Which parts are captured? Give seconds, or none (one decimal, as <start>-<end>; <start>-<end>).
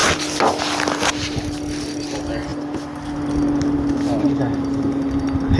0.0-1.1